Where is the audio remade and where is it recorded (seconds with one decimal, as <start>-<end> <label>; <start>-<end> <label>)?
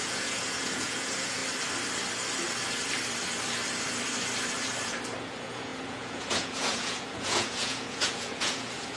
0.0-1.4 remade; 1.4-5.2 recorded; 5.2-9.0 remade